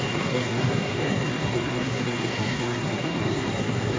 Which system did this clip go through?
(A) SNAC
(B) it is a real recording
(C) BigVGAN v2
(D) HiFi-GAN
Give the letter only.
A